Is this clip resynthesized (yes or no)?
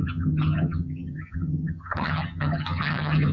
yes